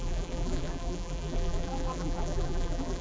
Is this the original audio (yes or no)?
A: no